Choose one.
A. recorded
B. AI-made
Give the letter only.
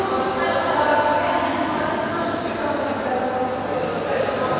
A